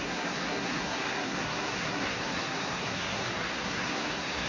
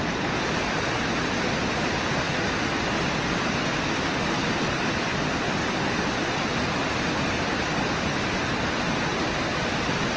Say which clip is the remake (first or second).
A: first